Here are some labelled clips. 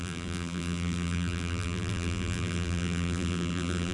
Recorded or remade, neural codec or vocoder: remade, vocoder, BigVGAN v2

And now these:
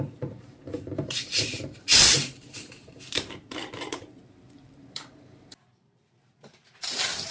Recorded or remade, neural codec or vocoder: remade, vocoder, BigVGAN v2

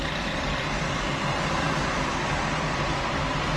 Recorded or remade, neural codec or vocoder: remade, vocoder, BigVGAN v2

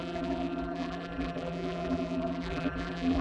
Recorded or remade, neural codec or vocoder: remade, vocoder, BigVGAN v2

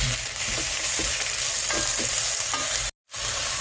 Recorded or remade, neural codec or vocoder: recorded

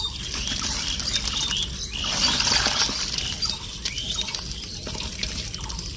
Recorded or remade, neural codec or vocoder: remade, vocoder, BigVGAN v2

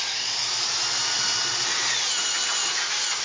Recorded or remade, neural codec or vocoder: recorded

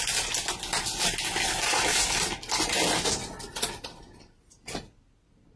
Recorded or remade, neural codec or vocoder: recorded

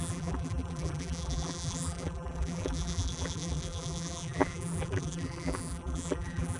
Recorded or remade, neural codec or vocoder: remade, vocoder, BigVGAN v2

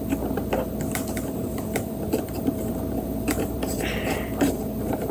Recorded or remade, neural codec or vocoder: remade, vocoder, BigVGAN v2